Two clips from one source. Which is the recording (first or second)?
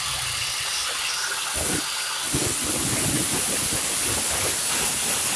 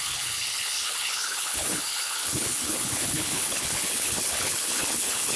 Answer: first